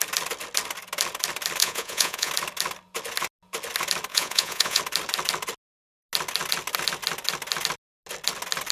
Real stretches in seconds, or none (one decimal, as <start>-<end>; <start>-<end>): 0.0-1.6; 2.3-4.1; 4.8-8.7